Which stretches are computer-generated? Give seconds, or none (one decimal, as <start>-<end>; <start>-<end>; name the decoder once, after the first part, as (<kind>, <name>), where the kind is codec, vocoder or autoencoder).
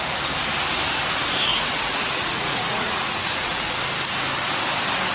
1.5-3.6 (vocoder, Vocos)